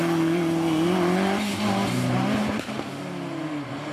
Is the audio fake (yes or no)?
no